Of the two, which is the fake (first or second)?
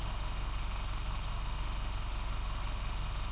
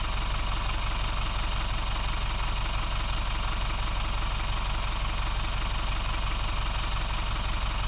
first